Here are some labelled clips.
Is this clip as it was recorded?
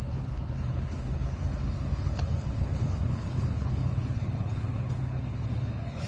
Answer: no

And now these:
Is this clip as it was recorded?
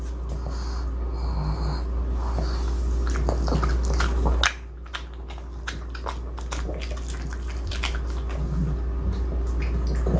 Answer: yes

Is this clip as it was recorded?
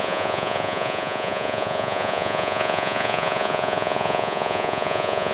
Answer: no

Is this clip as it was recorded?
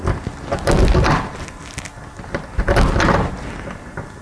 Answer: yes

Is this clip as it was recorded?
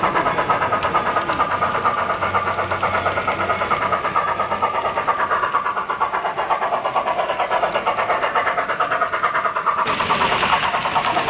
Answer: yes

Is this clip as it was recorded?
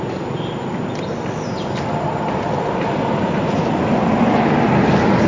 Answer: yes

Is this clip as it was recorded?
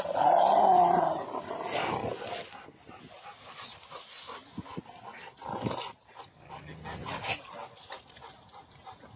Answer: yes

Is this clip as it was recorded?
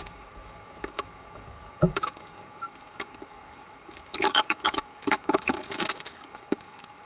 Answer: no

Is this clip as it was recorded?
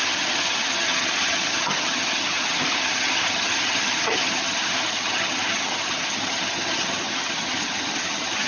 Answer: no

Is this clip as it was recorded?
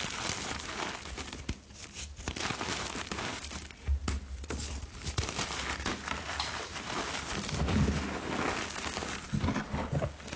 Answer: yes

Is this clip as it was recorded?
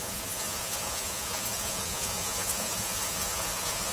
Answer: no